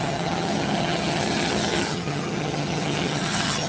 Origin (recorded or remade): remade